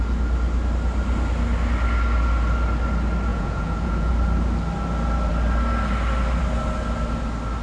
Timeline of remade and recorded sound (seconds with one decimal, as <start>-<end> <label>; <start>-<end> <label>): 0.0-3.3 recorded; 3.3-4.1 remade; 4.1-7.6 recorded